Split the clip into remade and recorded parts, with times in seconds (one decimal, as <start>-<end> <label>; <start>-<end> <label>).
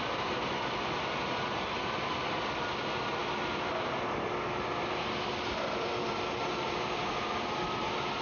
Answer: 0.0-8.2 recorded